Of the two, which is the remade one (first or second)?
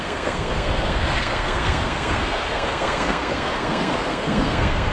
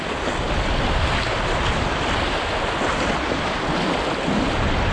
first